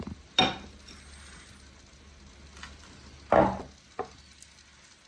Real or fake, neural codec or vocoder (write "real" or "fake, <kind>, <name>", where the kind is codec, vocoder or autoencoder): real